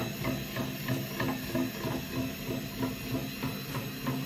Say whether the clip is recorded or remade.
recorded